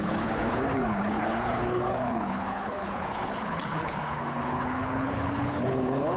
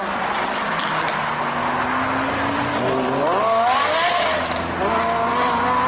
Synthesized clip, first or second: first